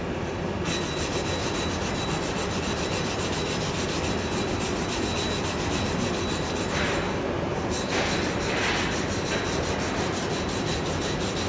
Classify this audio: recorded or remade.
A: recorded